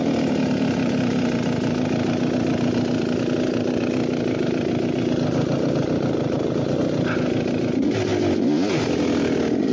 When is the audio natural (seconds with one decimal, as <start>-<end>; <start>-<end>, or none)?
0.0-9.7

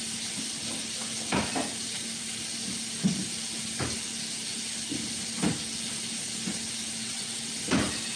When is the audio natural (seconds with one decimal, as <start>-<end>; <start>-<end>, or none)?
0.0-7.0; 7.5-8.2

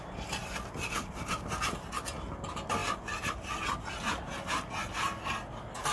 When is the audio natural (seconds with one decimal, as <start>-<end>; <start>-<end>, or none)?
0.0-5.9

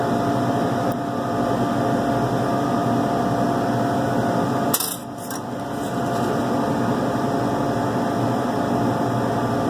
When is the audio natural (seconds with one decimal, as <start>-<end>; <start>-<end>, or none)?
0.0-9.7